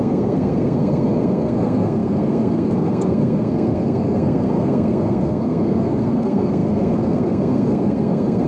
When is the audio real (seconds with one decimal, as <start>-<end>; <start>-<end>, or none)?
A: none